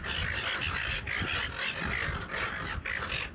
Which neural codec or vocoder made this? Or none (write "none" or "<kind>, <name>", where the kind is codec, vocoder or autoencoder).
none